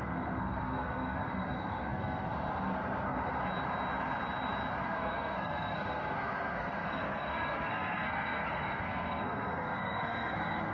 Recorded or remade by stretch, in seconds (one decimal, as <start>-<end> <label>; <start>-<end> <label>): 0.0-3.5 remade; 3.5-4.8 recorded; 4.8-10.7 remade